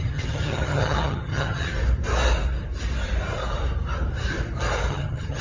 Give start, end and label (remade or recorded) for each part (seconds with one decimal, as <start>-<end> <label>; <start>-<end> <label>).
0.0-1.7 remade; 1.7-4.9 recorded; 4.9-5.4 remade